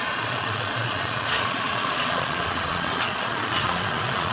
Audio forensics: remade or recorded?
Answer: remade